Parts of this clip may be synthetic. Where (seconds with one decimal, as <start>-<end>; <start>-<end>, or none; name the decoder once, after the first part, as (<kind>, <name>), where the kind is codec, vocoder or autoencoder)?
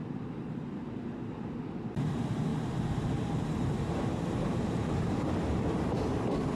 0.0-6.6 (vocoder, BigVGAN v2)